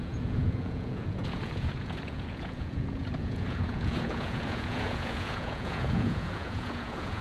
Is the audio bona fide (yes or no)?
no